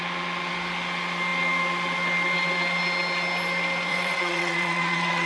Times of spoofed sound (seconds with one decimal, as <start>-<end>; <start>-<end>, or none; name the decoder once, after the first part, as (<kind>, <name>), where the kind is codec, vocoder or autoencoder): 3.9-5.3 (vocoder, WaveNeXt)